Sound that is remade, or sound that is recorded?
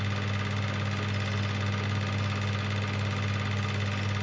recorded